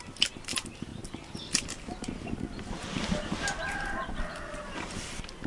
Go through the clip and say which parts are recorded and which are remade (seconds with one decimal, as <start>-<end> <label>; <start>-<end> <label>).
0.0-5.5 recorded